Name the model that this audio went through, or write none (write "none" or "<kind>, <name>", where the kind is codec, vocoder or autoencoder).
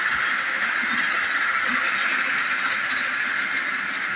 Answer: none